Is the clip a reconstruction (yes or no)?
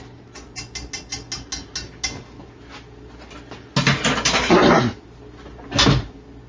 no